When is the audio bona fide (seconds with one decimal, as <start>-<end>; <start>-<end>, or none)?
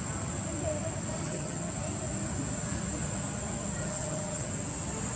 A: 0.0-1.2; 1.7-3.8; 4.5-5.2